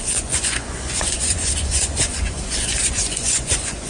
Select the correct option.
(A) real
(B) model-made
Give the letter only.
B